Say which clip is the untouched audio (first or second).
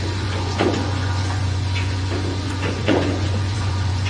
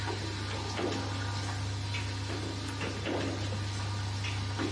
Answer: second